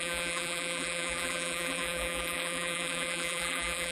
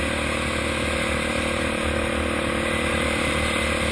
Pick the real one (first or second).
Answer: second